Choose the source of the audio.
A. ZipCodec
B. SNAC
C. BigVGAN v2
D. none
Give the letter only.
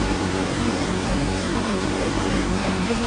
B